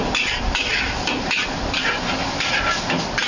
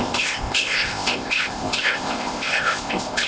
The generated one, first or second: second